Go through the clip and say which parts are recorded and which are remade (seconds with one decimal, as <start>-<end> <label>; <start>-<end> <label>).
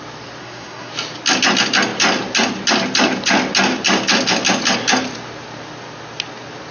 0.0-0.4 recorded; 0.4-0.9 remade; 0.9-6.7 recorded